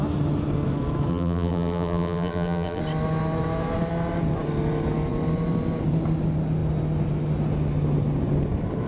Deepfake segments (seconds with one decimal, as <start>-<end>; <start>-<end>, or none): 1.1-2.8